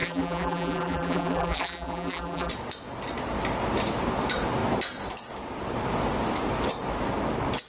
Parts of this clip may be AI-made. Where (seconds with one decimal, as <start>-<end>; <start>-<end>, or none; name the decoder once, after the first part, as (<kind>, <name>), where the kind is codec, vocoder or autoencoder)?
0.0-2.5 (vocoder, BigVGAN v2)